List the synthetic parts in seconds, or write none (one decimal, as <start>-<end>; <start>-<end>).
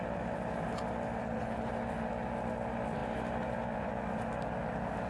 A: 1.2-1.7